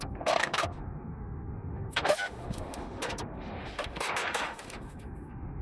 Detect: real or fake fake